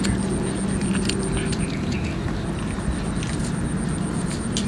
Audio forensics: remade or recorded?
recorded